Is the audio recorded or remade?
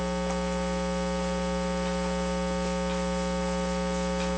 recorded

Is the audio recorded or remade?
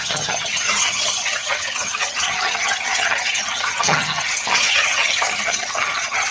remade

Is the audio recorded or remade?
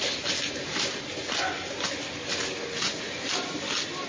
recorded